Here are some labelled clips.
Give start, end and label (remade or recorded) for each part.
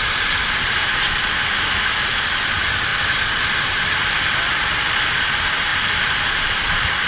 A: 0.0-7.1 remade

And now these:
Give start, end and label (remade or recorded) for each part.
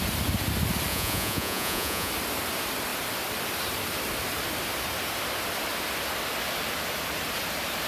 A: 0.0-0.9 recorded; 0.9-2.1 remade; 2.1-7.9 recorded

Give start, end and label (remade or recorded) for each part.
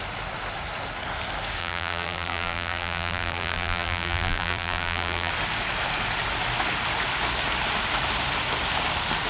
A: 0.0-1.6 recorded; 1.6-5.3 remade; 5.3-9.3 recorded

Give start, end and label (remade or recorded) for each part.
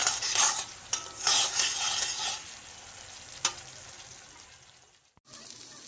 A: 0.0-5.9 recorded